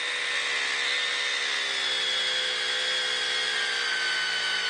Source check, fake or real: real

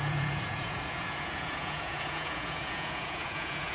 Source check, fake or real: fake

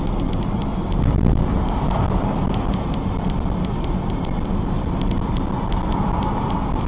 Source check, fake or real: real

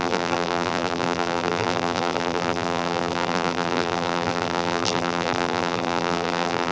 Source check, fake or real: fake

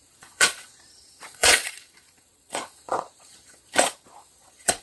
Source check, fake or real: fake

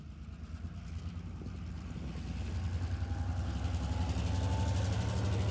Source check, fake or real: real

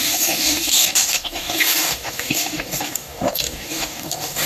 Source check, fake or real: fake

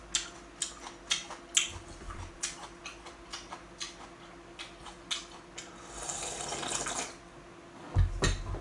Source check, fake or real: real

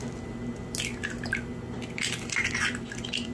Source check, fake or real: real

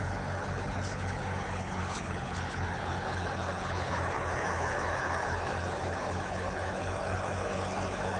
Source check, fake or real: fake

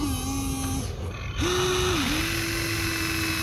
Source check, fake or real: real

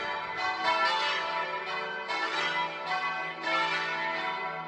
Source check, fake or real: real